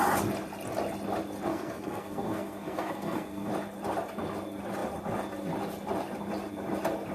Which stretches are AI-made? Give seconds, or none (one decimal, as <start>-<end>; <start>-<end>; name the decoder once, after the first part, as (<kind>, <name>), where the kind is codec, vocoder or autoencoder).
1.5-3.5 (codec, SNAC)